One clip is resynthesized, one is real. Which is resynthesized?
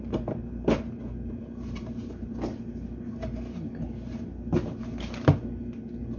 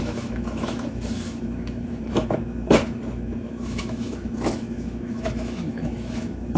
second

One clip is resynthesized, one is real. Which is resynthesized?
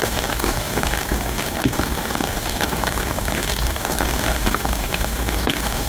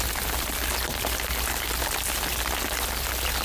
first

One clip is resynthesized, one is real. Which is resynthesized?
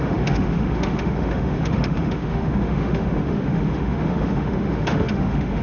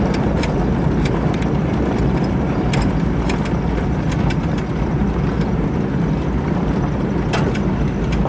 first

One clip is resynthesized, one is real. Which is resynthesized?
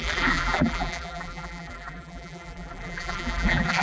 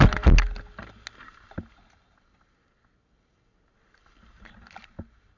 first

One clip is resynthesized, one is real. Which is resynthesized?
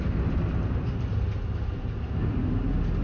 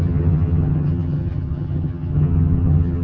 second